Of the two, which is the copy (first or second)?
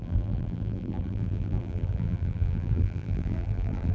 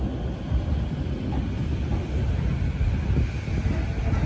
first